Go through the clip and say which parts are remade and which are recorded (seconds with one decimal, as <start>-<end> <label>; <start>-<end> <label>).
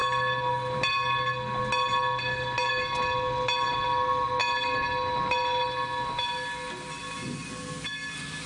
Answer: 0.0-8.5 recorded